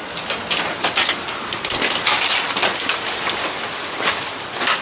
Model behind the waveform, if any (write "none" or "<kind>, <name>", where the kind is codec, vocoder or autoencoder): none